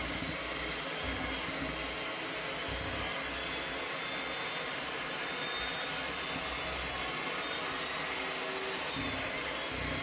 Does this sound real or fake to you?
real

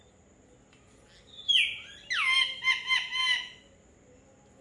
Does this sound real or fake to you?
real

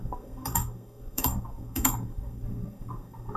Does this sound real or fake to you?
fake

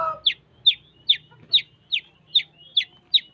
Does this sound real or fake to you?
real